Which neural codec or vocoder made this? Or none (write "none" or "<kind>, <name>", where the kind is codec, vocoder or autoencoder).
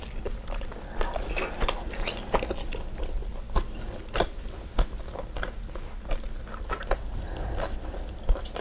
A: none